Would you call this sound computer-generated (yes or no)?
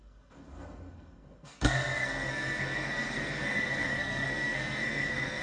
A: yes